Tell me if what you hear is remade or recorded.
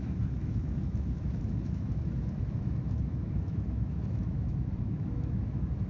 remade